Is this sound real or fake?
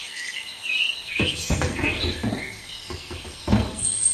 fake